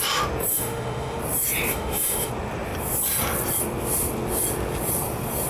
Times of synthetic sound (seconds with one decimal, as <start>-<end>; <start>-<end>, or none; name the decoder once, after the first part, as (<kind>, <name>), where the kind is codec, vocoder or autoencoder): 0.5-1.2 (autoencoder, DAC-VAE); 1.7-2.3